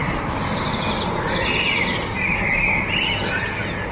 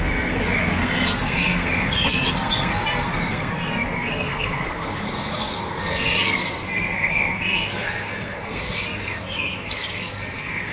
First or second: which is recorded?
first